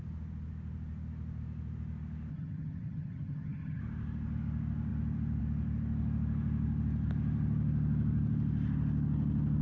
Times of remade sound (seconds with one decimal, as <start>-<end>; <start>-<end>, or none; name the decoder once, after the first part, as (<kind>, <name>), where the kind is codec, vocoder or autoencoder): 2.3-3.8 (vocoder, HiFi-GAN)